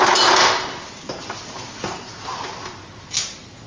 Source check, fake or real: real